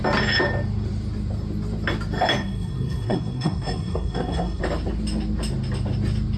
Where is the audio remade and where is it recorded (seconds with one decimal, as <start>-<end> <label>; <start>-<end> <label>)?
0.0-2.4 recorded; 2.4-4.6 remade; 4.6-6.4 recorded